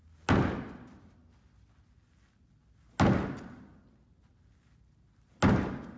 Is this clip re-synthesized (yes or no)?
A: no